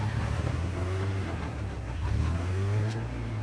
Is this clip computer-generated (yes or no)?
yes